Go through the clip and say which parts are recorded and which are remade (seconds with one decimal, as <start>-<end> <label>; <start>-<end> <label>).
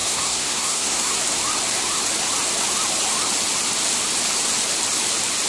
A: 0.0-1.1 remade; 1.1-5.5 recorded